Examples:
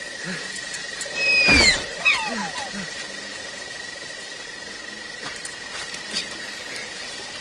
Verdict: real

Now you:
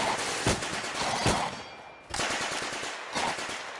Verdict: real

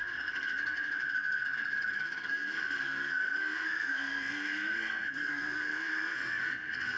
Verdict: fake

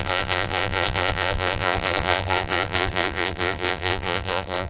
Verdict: fake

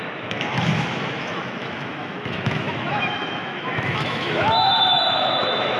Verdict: fake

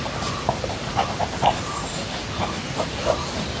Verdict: fake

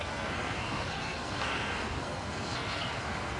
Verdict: fake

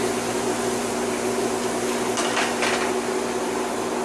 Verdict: real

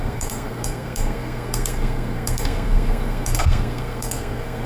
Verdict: fake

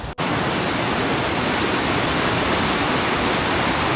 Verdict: real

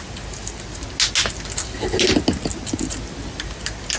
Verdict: real